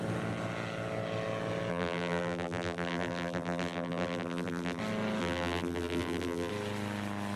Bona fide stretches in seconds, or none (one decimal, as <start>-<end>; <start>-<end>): 0.0-1.7; 4.8-5.2; 6.5-7.4